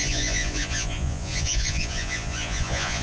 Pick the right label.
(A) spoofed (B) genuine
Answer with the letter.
A